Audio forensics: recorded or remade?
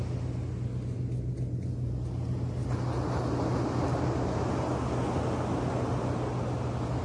recorded